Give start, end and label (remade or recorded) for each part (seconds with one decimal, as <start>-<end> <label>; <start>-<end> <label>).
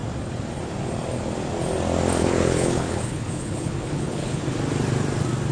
0.0-2.2 recorded; 2.2-4.4 remade; 4.4-5.5 recorded